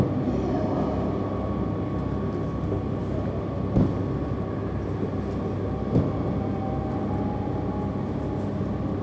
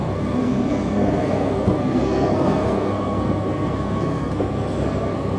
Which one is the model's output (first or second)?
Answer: second